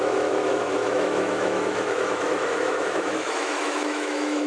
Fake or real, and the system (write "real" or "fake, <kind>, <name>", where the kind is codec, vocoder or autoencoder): fake, autoencoder, DAC-VAE